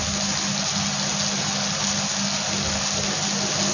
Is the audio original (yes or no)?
yes